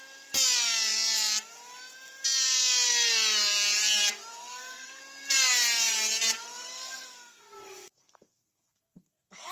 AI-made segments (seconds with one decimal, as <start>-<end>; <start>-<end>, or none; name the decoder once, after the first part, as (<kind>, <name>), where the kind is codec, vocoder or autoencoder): 4.3-5.0 (codec, SNAC); 6.4-9.5